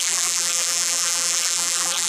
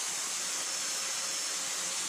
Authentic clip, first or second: second